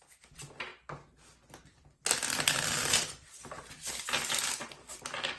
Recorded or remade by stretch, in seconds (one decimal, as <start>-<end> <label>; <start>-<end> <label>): 0.0-5.4 recorded